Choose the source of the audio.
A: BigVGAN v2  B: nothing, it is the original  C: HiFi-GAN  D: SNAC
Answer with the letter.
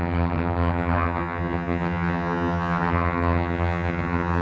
C